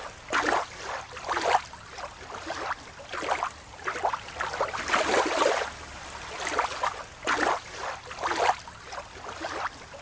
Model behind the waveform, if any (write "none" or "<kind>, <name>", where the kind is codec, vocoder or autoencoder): none